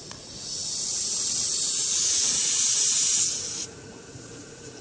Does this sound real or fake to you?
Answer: fake